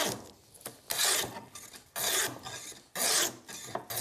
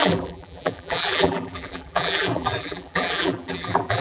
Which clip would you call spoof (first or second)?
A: second